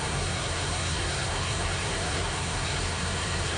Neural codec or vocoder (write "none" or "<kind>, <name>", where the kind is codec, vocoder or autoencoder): codec, SNAC